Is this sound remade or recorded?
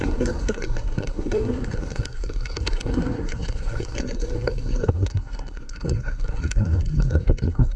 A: remade